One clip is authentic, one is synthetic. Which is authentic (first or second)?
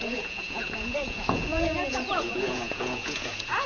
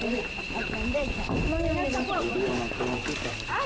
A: second